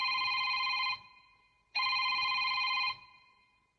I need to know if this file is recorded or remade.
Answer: remade